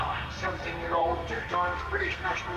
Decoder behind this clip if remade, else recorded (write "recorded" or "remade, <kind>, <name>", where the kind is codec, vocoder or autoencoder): remade, codec, SNAC